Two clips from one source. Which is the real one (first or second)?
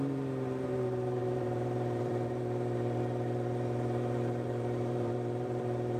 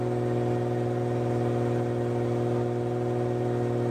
second